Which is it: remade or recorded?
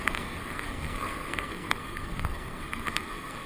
remade